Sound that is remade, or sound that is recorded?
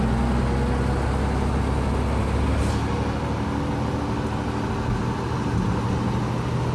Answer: recorded